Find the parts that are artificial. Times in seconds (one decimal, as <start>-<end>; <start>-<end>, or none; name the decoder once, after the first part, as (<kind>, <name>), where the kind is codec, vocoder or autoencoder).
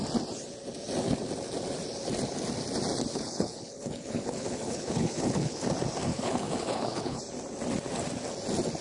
3.1-5.6 (codec, HILCodec); 6.1-7.2